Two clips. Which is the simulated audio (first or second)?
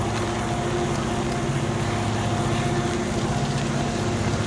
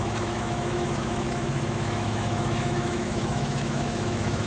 second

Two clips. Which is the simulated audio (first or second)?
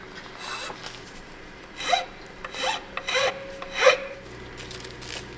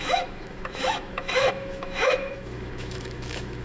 second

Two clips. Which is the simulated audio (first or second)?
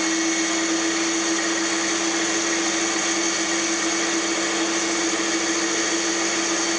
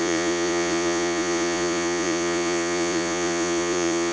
second